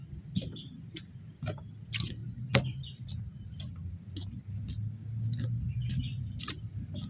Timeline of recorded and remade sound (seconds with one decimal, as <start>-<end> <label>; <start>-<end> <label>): 0.0-7.1 recorded